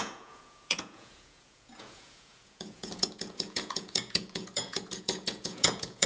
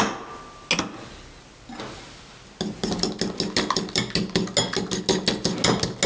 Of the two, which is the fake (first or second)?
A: first